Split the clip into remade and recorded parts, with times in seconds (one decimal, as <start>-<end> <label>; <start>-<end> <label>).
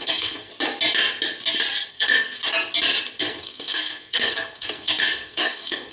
0.0-0.5 remade; 0.5-1.9 recorded; 1.9-2.4 remade; 2.4-3.2 recorded; 3.2-5.9 remade